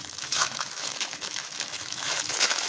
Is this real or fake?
fake